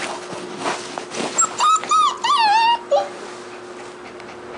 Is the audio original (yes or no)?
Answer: yes